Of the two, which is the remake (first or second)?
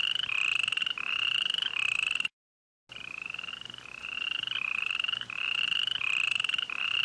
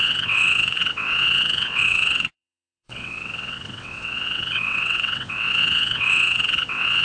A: second